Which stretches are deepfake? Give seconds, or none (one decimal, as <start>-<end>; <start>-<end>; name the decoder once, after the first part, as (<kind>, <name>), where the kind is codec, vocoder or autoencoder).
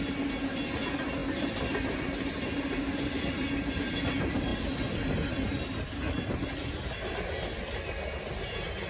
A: none